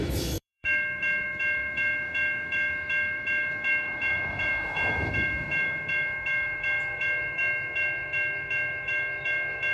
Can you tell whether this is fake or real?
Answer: fake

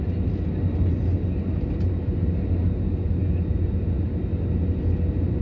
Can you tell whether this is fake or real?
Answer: real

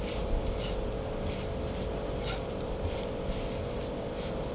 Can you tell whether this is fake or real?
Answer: real